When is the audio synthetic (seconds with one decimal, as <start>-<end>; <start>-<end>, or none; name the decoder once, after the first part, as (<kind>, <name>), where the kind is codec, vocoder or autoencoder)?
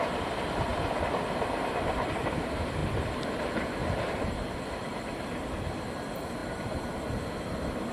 0.0-0.7 (vocoder, BigVGAN v2); 1.9-6.4